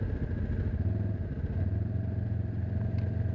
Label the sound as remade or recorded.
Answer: recorded